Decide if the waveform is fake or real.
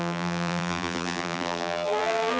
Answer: fake